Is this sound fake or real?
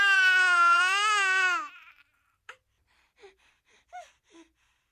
fake